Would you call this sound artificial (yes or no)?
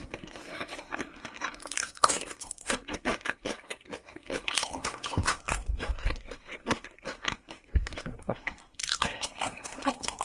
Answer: yes